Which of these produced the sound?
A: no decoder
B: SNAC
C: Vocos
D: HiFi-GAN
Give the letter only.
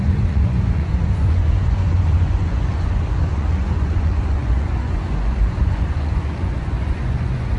C